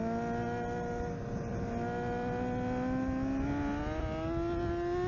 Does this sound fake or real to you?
real